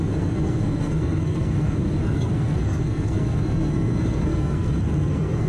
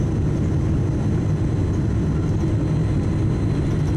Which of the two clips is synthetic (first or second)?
first